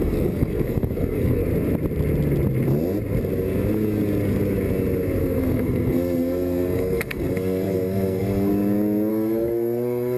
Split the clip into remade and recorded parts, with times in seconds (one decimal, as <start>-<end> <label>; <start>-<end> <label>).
0.0-1.4 remade; 1.4-5.2 recorded; 5.2-8.5 remade; 8.5-9.1 recorded; 9.1-10.2 remade